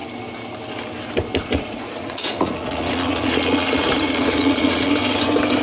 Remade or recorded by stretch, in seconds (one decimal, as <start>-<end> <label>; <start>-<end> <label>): 0.0-1.5 recorded; 1.5-4.9 remade; 4.9-5.6 recorded